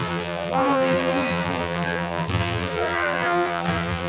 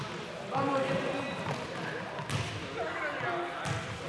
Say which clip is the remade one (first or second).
first